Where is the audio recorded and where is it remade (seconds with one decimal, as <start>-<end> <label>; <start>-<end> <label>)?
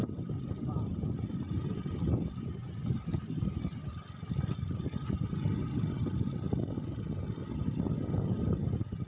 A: 0.0-9.1 recorded